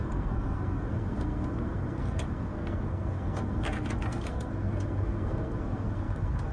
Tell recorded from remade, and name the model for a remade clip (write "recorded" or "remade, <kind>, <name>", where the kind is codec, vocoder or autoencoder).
remade, codec, SNAC